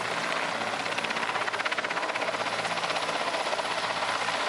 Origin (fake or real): real